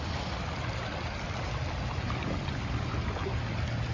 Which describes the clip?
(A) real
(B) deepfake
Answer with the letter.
A